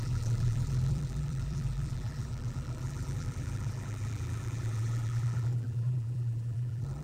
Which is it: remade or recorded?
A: remade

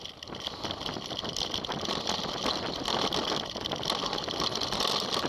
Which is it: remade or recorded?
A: recorded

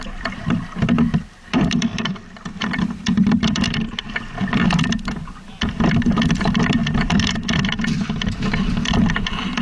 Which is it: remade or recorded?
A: remade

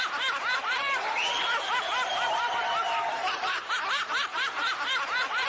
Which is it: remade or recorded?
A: recorded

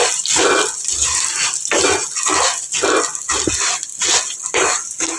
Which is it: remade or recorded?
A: recorded